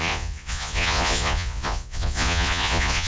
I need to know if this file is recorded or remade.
remade